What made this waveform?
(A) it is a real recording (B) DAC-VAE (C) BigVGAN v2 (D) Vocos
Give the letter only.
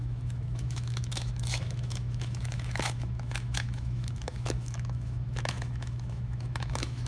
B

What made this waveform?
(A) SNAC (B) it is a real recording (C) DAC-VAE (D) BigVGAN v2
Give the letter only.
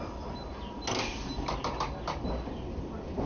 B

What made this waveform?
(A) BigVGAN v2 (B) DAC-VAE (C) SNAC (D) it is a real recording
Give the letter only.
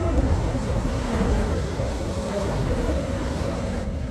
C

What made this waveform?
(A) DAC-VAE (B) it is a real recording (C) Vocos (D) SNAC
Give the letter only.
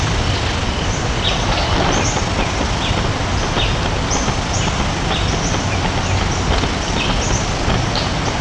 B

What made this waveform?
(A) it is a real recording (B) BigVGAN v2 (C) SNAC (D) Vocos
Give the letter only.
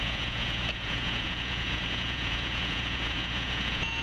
D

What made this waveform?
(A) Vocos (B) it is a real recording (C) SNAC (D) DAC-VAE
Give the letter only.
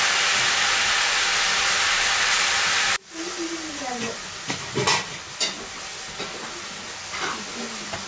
B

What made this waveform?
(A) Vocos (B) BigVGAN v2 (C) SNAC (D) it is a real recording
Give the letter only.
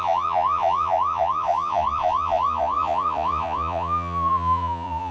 A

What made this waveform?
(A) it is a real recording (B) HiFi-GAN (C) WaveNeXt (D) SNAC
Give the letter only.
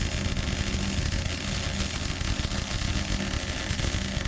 A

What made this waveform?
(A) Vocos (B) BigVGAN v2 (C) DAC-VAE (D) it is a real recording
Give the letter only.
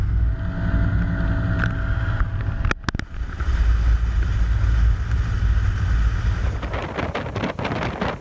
D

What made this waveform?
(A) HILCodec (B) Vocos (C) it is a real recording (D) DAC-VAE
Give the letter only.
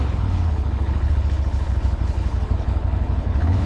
A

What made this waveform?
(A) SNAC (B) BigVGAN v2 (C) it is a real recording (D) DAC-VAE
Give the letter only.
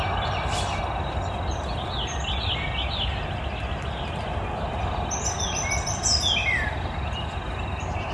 C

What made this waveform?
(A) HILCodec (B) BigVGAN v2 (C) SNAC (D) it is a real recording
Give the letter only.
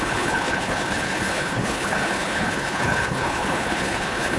A